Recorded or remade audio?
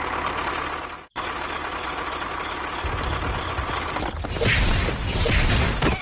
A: recorded